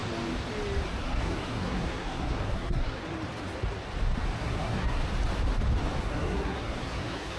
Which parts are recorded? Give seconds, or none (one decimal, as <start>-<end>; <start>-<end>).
0.0-1.0; 3.0-4.4; 5.0-6.0